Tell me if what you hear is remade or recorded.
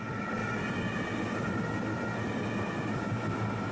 recorded